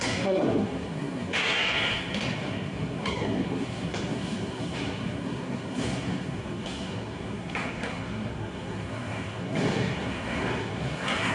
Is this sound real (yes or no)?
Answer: no